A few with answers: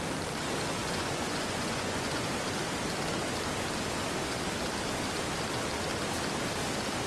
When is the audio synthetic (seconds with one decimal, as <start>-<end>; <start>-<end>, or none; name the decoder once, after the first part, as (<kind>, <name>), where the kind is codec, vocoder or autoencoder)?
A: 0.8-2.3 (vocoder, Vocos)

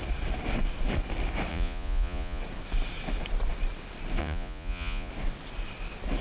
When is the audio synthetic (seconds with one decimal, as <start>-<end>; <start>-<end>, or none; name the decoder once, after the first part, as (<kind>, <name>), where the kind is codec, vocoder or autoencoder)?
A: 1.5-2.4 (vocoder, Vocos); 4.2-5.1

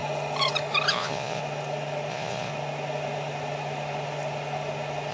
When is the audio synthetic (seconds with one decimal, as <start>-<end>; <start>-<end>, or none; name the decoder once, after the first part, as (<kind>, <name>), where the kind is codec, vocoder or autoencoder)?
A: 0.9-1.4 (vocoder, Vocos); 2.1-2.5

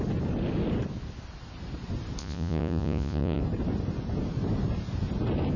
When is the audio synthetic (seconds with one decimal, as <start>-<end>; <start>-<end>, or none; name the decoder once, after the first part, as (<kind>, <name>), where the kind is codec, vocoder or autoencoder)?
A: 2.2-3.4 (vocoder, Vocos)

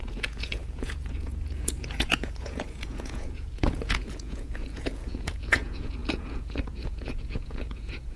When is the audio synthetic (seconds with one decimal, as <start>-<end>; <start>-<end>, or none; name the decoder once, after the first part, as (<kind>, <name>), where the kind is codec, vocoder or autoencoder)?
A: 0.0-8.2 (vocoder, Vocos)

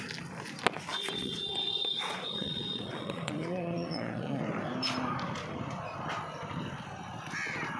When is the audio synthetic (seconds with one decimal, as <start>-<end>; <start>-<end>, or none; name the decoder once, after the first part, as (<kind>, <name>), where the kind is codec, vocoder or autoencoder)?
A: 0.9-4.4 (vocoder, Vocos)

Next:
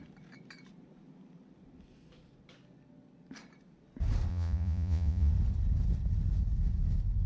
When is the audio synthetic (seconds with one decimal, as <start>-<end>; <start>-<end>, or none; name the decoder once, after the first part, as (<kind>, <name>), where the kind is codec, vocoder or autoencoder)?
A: 4.3-5.3 (vocoder, Vocos)

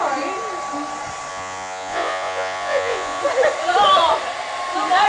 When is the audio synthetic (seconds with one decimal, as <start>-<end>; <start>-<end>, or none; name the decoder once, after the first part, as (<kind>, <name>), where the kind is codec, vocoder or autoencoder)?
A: 1.3-3.2 (vocoder, Vocos)